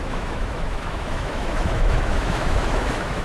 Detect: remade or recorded remade